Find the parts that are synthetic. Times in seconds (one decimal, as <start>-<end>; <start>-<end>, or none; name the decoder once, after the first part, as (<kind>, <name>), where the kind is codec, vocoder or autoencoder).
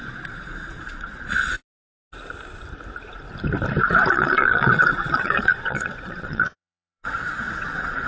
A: 0.0-1.5 (vocoder, Vocos); 4.1-8.1